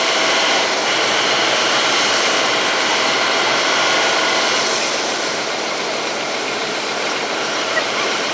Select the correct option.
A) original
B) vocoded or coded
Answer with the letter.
B